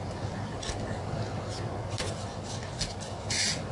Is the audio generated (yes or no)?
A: no